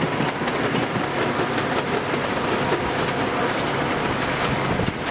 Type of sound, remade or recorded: recorded